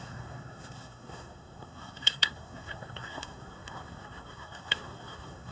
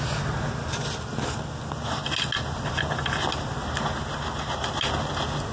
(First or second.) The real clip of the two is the second